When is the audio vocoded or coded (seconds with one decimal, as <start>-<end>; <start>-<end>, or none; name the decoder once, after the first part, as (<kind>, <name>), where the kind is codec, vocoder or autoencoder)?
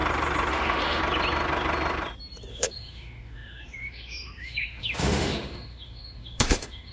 0.5-1.0 (autoencoder, DAC-VAE); 2.5-6.9